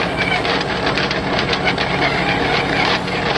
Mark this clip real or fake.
real